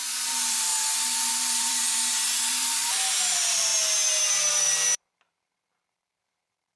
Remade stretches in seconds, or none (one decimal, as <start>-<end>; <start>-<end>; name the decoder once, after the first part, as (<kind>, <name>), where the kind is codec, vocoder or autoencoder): 0.0-0.7 (vocoder, BigVGAN v2); 1.3-1.8; 2.5-3.7; 4.5-6.8